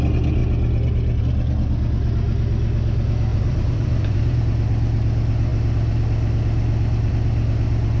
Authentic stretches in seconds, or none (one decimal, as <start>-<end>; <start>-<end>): 0.0-3.3; 4.4-8.0